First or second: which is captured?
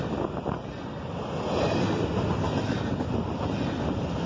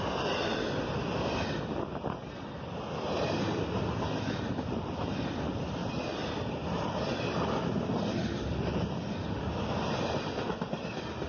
first